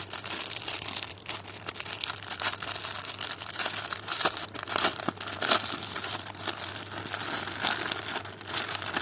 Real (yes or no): yes